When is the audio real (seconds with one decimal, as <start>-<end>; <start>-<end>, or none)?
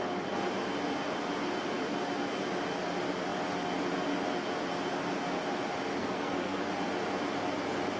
0.0-6.0; 6.7-8.0